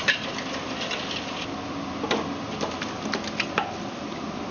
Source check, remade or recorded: recorded